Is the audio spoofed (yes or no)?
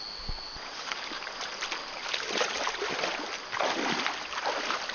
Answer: no